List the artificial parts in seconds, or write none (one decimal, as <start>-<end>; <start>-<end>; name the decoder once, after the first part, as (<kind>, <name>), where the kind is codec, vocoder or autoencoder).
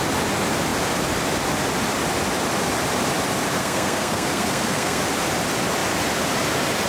3.6-5.0 (codec, SNAC)